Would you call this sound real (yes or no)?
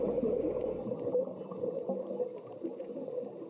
yes